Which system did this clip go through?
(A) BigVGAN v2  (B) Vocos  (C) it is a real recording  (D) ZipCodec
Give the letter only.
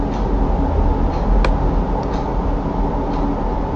C